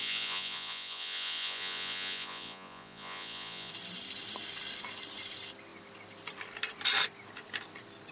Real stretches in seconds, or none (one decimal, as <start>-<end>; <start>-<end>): 3.7-8.1